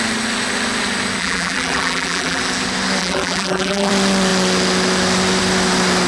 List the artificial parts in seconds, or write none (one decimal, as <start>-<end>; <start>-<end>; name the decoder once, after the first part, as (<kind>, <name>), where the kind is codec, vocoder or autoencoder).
1.2-2.4 (vocoder, BigVGAN v2); 3.0-3.9